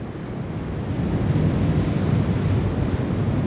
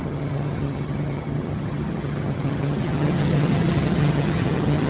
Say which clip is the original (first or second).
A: first